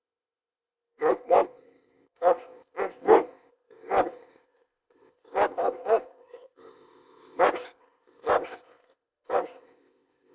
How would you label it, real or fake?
fake